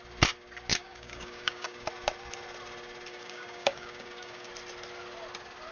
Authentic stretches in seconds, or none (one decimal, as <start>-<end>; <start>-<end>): 0.0-0.7; 1.9-3.1; 4.5-5.7